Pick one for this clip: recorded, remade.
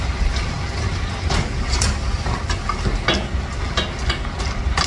recorded